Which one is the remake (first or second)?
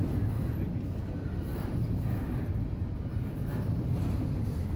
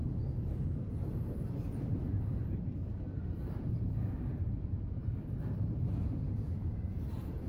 second